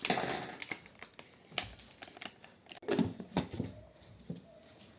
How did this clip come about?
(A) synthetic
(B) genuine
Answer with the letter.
B